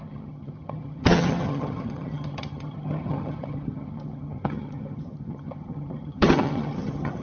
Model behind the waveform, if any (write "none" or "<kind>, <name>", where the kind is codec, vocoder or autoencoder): vocoder, HiFi-GAN